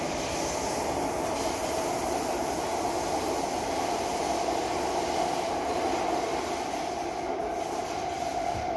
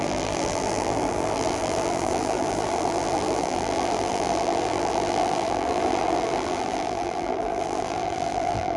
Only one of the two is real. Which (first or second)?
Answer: first